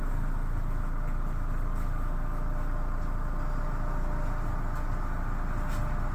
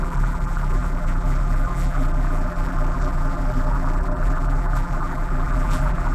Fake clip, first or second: second